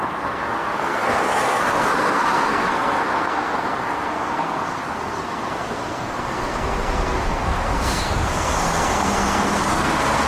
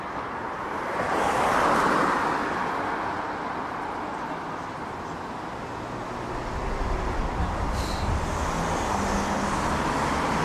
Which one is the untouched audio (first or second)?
second